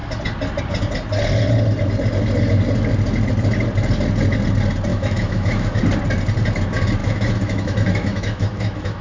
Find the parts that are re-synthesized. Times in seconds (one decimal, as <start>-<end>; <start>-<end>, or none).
4.9-5.8; 7.0-9.0